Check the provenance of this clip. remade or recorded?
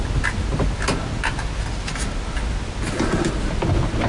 recorded